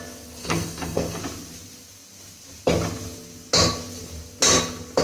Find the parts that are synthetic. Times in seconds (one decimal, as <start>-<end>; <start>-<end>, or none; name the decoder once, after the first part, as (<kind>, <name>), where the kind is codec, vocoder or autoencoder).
0.4-1.2 (codec, SNAC)